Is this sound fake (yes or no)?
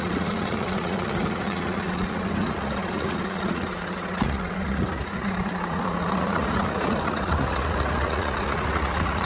yes